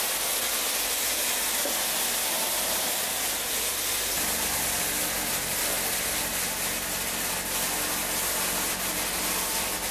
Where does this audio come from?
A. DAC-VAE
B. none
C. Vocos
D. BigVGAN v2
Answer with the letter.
B